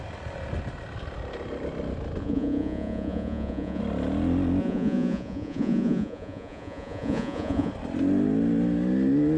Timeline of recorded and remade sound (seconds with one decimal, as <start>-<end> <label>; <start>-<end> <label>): 0.0-2.2 recorded; 2.2-3.8 remade; 3.8-4.6 recorded; 4.6-7.7 remade; 7.7-9.4 recorded